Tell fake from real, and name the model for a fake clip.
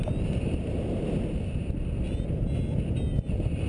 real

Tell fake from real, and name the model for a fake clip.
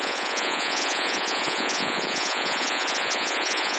fake, vocoder, Vocos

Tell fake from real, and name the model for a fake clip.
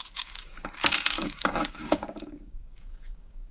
fake, codec, DAC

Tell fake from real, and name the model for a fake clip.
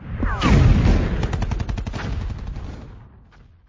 real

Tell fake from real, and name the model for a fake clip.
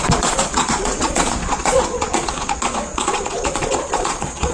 fake, vocoder, Vocos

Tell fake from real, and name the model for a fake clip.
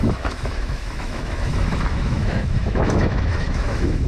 fake, autoencoder, DAC-VAE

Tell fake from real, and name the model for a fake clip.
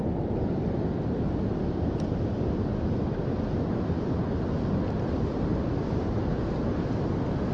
real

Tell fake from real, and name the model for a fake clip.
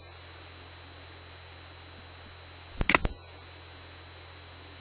real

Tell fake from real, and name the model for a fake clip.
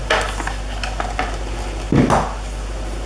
real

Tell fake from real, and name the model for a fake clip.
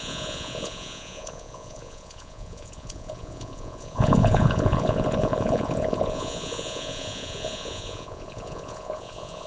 fake, vocoder, Vocos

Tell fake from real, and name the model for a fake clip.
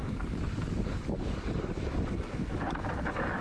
fake, codec, DAC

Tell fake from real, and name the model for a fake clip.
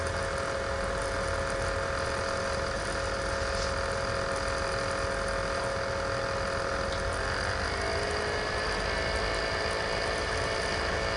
real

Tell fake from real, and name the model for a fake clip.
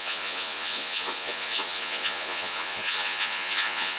fake, vocoder, Vocos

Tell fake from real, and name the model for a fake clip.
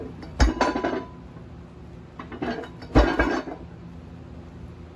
real